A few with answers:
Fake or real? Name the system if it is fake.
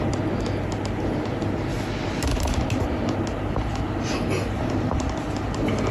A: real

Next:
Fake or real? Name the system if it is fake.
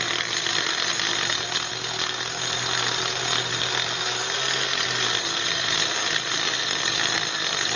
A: real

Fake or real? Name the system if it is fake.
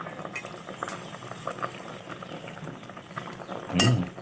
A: real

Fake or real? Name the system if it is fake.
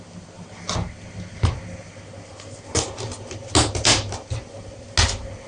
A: real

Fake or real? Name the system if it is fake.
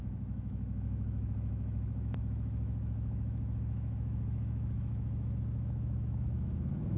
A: fake, autoencoder, DAC-VAE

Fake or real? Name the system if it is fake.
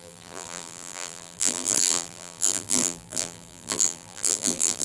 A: fake, vocoder, BigVGAN v2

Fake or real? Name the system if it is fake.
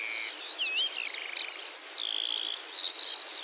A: real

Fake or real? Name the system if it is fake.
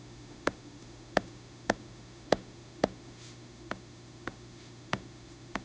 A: fake, autoencoder, DAC-VAE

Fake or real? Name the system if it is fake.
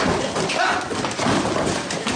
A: real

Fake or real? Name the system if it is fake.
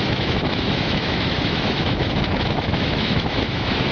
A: fake, autoencoder, DAC-VAE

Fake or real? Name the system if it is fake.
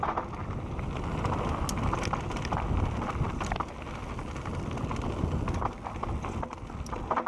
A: real